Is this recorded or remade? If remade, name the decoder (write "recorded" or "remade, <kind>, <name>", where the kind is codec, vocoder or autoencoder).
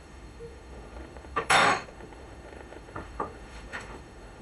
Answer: remade, autoencoder, DAC-VAE